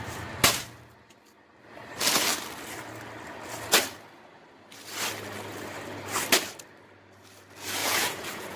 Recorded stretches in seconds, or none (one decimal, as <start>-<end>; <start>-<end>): 0.0-7.8